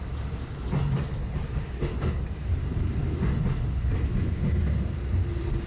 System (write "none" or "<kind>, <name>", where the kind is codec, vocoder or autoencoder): none